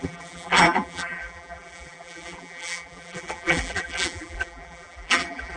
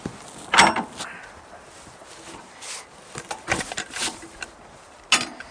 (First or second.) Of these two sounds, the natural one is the second